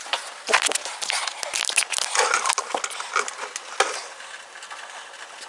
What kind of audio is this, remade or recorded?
recorded